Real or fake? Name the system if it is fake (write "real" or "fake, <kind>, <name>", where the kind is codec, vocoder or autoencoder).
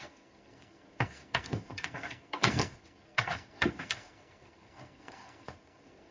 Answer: fake, codec, SNAC